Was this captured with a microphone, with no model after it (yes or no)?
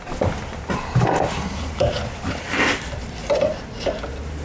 yes